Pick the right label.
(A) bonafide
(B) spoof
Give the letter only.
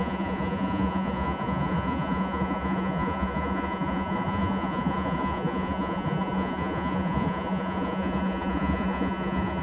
B